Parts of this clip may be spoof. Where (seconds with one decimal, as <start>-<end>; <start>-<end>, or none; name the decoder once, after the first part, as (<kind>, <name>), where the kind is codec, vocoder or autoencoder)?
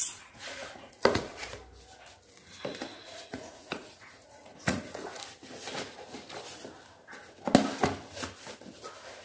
0.0-1.4 (vocoder, Vocos); 2.9-5.2